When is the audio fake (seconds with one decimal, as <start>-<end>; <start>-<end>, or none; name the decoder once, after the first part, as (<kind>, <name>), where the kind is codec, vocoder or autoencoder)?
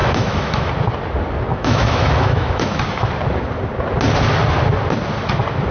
0.0-0.7 (autoencoder, DAC-VAE); 1.5-3.1